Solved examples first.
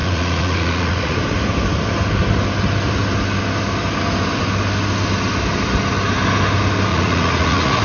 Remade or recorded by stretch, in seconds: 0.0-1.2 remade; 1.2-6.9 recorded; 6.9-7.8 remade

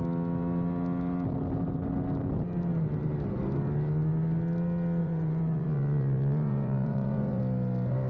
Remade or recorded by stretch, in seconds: 0.0-5.0 recorded; 5.0-7.4 remade; 7.4-8.1 recorded

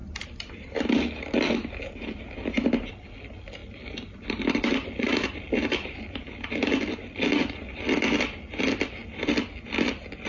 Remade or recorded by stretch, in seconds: 0.0-10.3 recorded

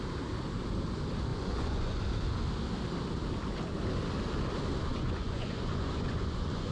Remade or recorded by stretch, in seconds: 0.0-1.3 recorded; 1.3-2.0 remade; 2.0-4.9 recorded; 4.9-6.7 remade

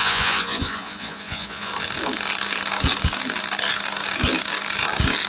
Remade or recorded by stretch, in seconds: 0.0-1.7 remade; 1.7-5.3 recorded

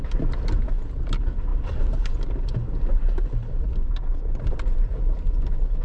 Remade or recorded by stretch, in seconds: 0.0-5.8 recorded

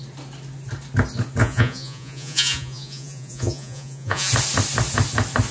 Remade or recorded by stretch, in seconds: 0.0-1.4 recorded; 1.4-4.3 remade; 4.3-5.5 recorded